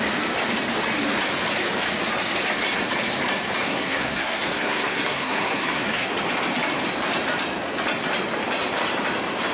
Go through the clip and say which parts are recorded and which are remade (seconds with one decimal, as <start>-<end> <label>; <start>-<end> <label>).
0.0-3.7 recorded; 3.7-6.1 remade; 6.1-9.5 recorded